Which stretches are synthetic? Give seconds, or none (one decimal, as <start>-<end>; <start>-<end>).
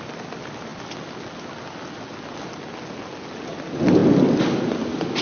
none